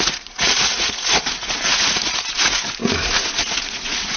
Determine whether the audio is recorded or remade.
remade